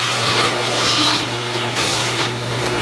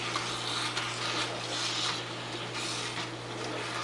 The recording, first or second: second